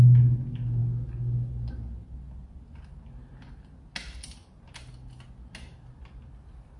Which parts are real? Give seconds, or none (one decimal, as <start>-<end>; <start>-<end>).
0.0-6.8